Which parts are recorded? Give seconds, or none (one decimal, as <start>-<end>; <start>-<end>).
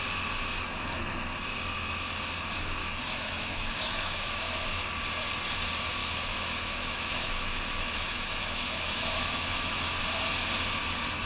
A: 0.0-2.8; 4.6-6.0; 10.0-11.3